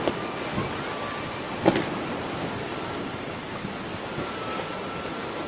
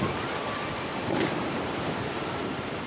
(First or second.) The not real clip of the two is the second